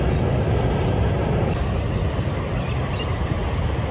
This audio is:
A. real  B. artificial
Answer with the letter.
A